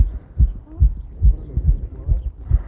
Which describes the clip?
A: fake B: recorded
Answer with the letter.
B